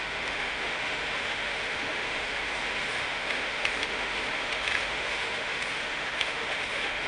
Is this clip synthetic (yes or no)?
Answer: yes